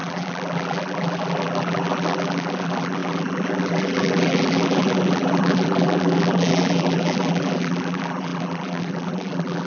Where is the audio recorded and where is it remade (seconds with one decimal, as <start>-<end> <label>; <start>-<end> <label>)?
0.0-9.7 remade